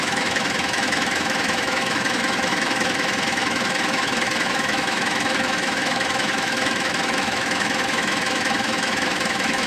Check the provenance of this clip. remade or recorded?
remade